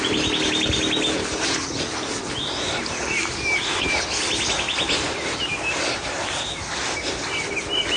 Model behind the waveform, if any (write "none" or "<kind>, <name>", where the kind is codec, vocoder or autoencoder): none